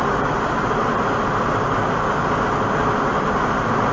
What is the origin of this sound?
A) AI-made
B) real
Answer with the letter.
B